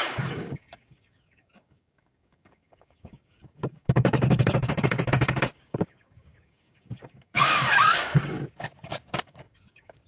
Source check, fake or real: fake